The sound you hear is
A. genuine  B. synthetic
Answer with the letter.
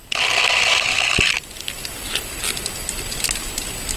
A